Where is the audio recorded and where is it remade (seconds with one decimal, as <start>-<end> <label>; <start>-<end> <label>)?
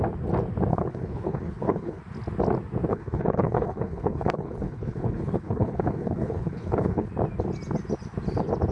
0.0-0.7 recorded; 0.7-2.0 remade; 2.0-2.9 recorded; 2.9-7.1 remade; 7.1-8.7 recorded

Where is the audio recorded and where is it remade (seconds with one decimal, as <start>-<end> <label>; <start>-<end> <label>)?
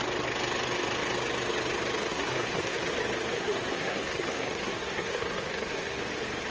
0.0-2.1 recorded; 2.1-2.9 remade; 2.9-3.3 recorded; 3.3-6.0 remade; 6.0-6.5 recorded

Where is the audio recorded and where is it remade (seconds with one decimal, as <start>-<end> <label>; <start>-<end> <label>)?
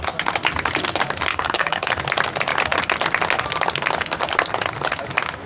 0.0-1.3 recorded; 1.3-1.9 remade; 1.9-5.5 recorded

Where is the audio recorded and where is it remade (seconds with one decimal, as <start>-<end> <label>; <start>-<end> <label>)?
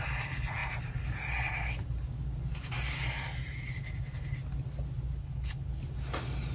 0.0-5.2 recorded; 5.2-5.8 remade; 5.8-6.5 recorded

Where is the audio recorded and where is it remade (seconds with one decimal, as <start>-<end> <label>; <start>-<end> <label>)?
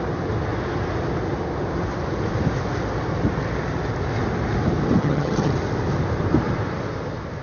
0.0-5.0 recorded; 5.0-5.5 remade; 5.5-7.4 recorded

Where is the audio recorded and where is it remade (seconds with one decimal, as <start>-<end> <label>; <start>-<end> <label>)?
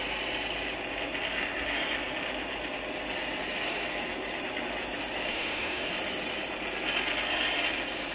0.0-5.3 recorded; 5.3-5.8 remade; 5.8-8.1 recorded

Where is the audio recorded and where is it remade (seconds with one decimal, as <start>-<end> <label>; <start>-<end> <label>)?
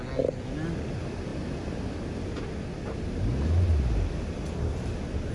0.0-5.3 recorded